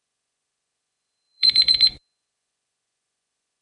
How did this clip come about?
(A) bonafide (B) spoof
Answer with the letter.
B